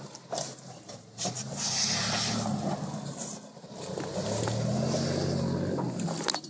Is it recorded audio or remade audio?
recorded